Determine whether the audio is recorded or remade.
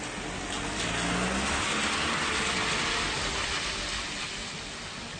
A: recorded